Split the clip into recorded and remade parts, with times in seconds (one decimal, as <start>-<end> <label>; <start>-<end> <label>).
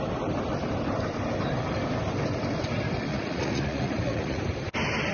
0.0-3.1 recorded; 3.1-4.4 remade; 4.4-5.1 recorded